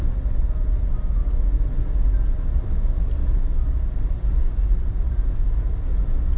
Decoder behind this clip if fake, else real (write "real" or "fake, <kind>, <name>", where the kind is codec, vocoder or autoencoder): real